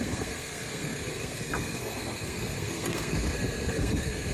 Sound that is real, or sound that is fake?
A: fake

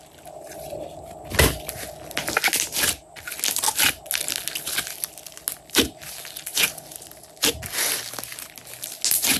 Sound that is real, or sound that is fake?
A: real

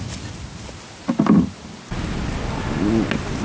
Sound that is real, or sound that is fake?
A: real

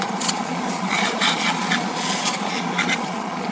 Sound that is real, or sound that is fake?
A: fake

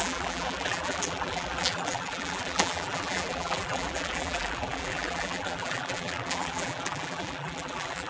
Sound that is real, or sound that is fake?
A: fake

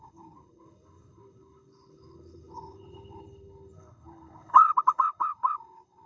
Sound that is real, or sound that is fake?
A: fake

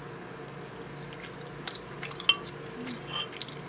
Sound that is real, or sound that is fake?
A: real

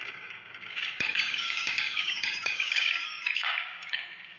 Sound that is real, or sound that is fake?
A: fake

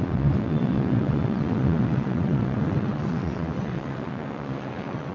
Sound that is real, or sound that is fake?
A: fake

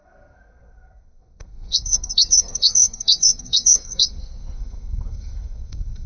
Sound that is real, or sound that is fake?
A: fake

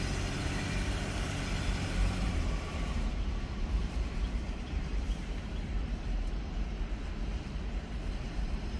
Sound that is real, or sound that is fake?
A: fake